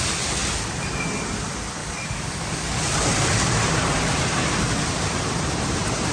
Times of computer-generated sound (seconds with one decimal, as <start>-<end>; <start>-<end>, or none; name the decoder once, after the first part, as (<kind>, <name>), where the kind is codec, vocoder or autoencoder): 1.8-2.8 (codec, DAC)